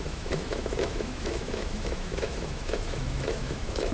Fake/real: fake